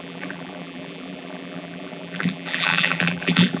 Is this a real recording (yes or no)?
no